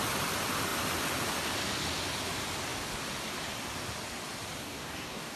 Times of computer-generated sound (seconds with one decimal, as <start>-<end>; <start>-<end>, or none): 4.6-5.4